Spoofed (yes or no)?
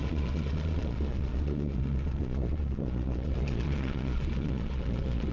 yes